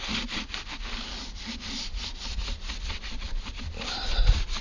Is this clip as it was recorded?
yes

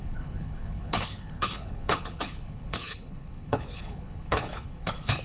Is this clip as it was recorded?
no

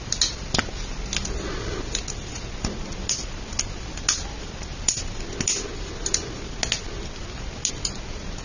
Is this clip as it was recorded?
yes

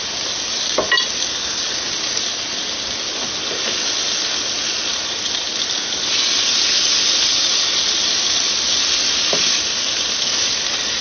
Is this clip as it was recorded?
yes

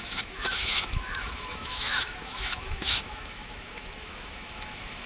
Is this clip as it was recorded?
no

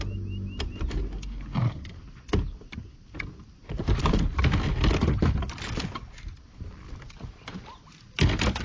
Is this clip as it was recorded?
yes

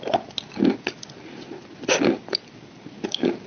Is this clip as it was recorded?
yes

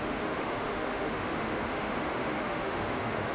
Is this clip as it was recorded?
no